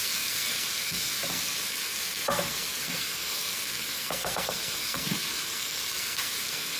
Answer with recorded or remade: remade